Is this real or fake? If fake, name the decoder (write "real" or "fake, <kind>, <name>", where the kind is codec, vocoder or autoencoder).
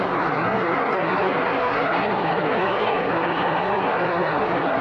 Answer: fake, codec, SNAC